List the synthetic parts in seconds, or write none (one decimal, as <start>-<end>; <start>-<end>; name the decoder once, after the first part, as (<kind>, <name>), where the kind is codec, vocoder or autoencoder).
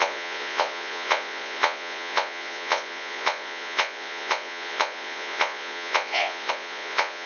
0.0-7.3 (vocoder, Vocos)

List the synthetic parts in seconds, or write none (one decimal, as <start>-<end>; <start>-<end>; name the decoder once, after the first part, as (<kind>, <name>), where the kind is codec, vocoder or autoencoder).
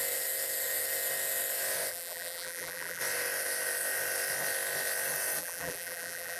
1.9-3.0 (vocoder, BigVGAN v2); 5.4-6.4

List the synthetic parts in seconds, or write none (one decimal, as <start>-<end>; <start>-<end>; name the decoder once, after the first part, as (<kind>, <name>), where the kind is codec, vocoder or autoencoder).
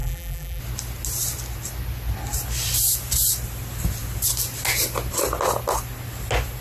0.0-0.6 (vocoder, BigVGAN v2)